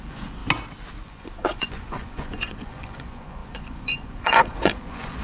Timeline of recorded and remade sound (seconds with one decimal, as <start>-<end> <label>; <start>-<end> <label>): 0.0-0.4 remade; 0.4-1.0 recorded; 1.0-5.2 remade